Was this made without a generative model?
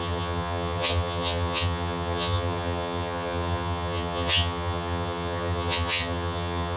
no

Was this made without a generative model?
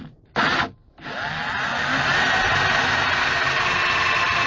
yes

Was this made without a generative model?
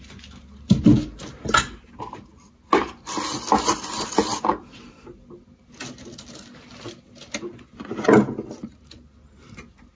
yes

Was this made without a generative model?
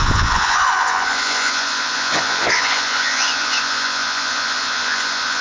no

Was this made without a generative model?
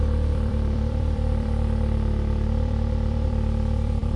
no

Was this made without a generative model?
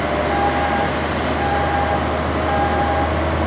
yes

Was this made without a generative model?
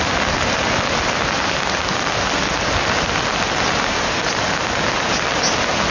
yes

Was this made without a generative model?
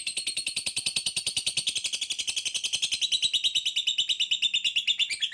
yes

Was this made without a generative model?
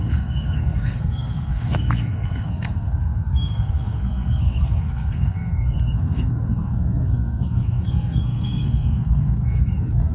no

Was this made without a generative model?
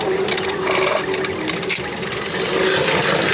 yes